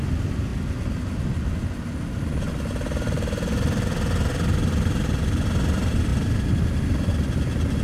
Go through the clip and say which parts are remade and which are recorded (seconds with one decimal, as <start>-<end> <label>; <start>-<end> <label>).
0.0-7.8 recorded